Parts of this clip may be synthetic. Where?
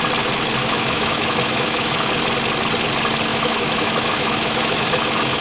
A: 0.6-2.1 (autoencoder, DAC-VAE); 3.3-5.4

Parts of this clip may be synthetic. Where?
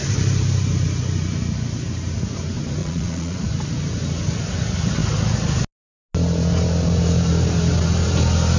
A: 2.8-3.4 (vocoder, Vocos)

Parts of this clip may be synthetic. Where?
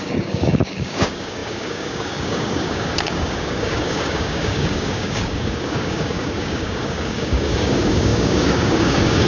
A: 0.0-9.3 (codec, DAC)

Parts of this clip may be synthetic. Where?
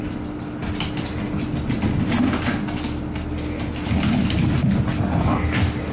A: none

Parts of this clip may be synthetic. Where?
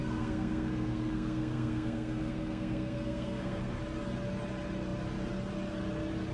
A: 0.0-3.8 (codec, SNAC)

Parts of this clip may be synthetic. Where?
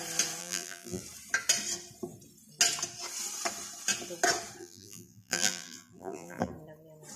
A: 0.4-1.0 (vocoder, BigVGAN v2); 4.6-6.5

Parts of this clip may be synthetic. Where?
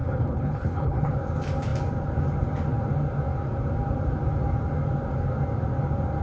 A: 0.0-1.1 (codec, HILCodec)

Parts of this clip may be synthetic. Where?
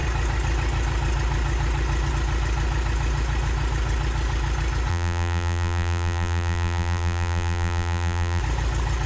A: 4.9-8.4 (vocoder, BigVGAN v2)